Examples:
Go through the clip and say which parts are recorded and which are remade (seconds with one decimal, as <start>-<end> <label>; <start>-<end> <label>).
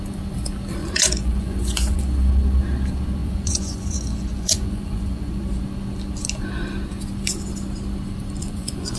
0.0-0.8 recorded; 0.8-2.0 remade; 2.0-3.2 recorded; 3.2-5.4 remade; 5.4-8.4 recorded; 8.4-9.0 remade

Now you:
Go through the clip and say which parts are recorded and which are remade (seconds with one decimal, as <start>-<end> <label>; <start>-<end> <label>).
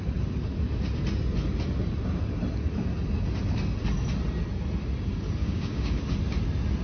0.0-5.4 recorded; 5.4-6.0 remade; 6.0-6.8 recorded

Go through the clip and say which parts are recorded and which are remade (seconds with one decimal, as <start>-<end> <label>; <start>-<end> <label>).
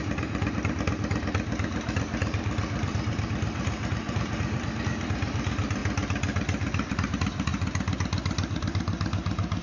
0.0-5.8 remade; 5.8-7.1 recorded; 7.1-7.5 remade; 7.5-8.6 recorded; 8.6-9.6 remade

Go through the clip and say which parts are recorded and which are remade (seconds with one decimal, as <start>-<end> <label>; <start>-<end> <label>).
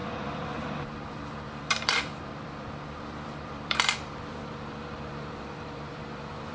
0.0-6.5 remade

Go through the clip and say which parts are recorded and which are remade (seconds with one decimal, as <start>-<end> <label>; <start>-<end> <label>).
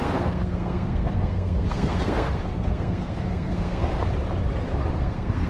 0.0-3.9 remade; 3.9-4.9 recorded; 4.9-5.5 remade